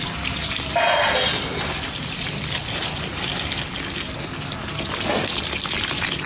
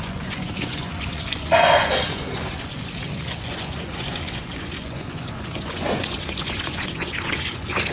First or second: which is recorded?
first